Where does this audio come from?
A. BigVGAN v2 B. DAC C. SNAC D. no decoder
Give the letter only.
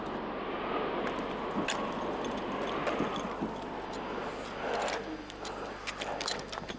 D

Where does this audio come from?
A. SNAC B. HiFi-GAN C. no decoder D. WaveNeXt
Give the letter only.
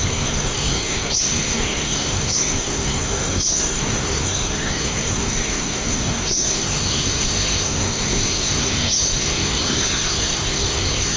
A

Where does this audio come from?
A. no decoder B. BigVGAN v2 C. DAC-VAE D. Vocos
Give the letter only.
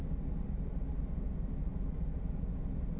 A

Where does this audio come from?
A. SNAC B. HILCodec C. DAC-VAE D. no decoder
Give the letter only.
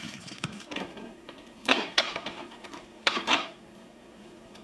A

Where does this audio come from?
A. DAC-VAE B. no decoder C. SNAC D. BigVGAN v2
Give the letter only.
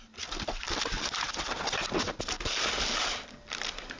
D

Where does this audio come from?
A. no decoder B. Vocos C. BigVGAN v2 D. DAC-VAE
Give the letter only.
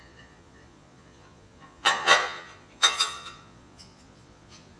B